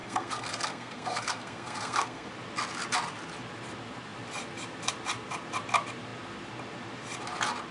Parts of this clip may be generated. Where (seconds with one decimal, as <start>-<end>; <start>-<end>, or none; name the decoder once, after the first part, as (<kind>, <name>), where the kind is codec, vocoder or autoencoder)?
0.0-2.3 (codec, SNAC)